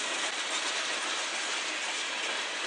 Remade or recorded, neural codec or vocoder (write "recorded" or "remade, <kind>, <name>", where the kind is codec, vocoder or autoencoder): recorded